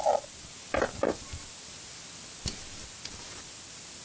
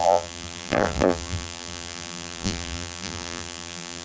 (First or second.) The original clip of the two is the first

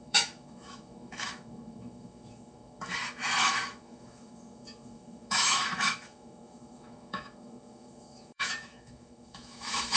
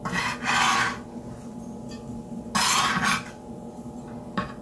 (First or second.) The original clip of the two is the second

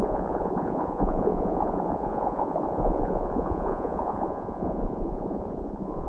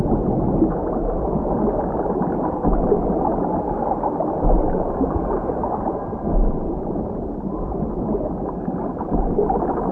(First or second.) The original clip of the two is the second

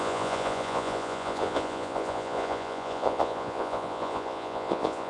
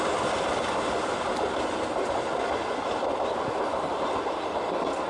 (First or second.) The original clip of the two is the second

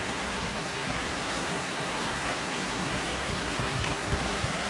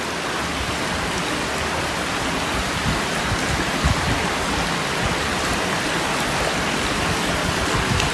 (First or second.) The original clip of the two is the second